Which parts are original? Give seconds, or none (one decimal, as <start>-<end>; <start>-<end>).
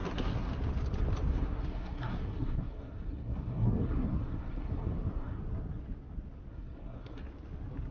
0.5-1.3; 5.4-6.5; 7.2-7.9